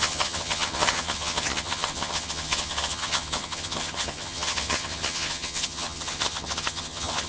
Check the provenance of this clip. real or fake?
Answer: fake